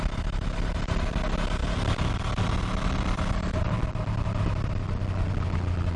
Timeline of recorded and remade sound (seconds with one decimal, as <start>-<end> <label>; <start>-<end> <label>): 0.0-6.0 recorded

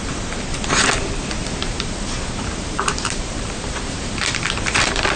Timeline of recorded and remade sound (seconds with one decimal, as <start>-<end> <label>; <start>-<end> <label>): 0.0-1.4 recorded; 1.4-4.1 remade; 4.1-5.2 recorded

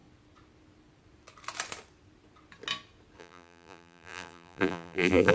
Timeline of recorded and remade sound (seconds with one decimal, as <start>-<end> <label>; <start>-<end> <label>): 0.0-3.2 recorded; 3.2-5.3 remade

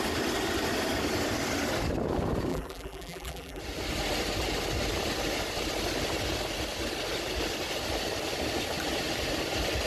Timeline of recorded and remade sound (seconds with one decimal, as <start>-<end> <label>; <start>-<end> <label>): 0.0-2.5 recorded; 2.5-3.6 remade; 3.6-9.9 recorded

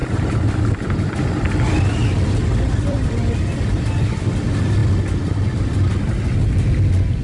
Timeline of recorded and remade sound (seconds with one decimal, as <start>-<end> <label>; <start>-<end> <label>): 0.0-3.1 remade; 3.1-7.2 recorded

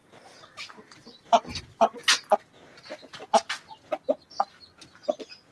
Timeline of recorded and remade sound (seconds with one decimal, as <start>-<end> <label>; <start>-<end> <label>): 0.0-1.6 remade; 1.6-5.5 recorded

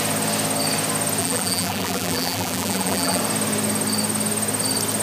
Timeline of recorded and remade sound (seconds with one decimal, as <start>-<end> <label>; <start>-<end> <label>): 0.0-1.2 recorded; 1.2-3.2 remade; 3.2-5.0 recorded